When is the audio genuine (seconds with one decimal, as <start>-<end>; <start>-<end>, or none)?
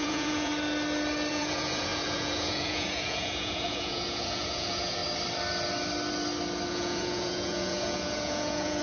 0.5-1.3; 5.0-6.7